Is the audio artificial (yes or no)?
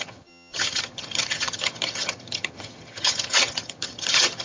yes